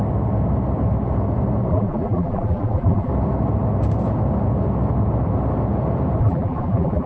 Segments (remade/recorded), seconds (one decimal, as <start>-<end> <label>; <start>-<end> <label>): 0.0-1.7 recorded; 1.7-3.1 remade; 3.1-6.2 recorded; 6.2-7.1 remade